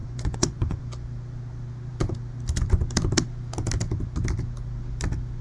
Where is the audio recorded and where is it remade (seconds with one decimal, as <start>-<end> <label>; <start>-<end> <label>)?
0.0-0.8 remade; 0.8-5.4 recorded